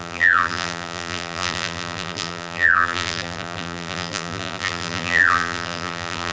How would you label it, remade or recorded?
remade